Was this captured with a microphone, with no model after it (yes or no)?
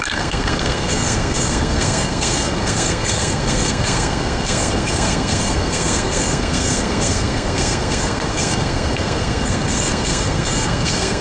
no